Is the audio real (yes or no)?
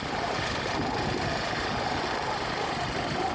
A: no